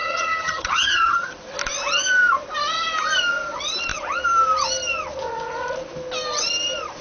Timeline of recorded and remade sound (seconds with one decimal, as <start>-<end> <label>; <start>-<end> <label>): 0.0-1.3 remade; 1.3-7.0 recorded